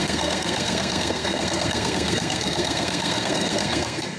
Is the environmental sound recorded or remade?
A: remade